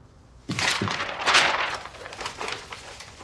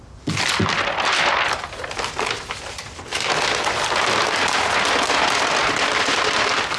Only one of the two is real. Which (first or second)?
second